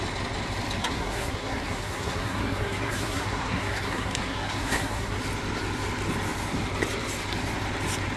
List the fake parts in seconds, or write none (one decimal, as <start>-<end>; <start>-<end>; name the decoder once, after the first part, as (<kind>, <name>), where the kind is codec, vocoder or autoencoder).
0.8-5.2 (codec, SNAC)